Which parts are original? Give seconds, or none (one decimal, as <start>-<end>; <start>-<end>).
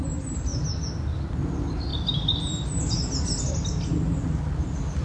0.0-5.0